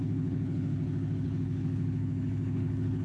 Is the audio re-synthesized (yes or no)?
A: yes